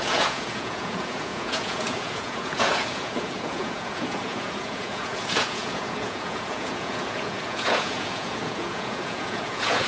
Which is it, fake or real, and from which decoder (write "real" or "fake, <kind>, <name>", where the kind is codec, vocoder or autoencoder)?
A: fake, vocoder, Vocos